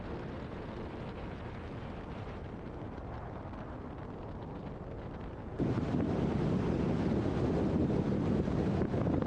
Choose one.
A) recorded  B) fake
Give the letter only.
A